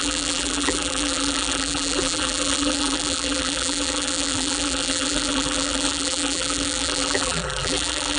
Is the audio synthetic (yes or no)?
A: yes